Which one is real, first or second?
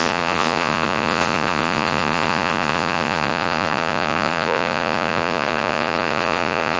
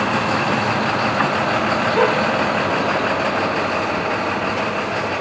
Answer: second